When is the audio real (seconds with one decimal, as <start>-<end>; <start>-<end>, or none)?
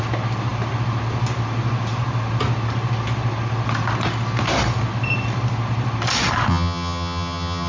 0.0-6.5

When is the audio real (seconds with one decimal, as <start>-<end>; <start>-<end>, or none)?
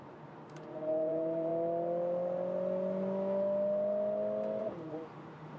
1.5-4.6